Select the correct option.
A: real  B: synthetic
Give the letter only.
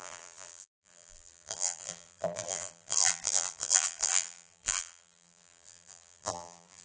B